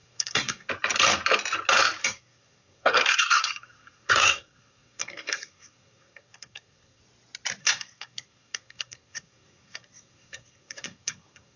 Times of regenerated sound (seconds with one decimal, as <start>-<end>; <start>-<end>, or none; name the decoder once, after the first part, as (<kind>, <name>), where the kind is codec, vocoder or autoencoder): 0.0-0.7 (codec, SNAC); 2.0-7.0; 7.6-11.6